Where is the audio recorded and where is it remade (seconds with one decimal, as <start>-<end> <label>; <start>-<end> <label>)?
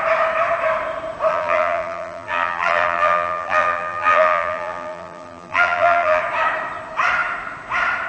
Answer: 0.0-1.3 recorded; 1.3-6.2 remade; 6.2-8.1 recorded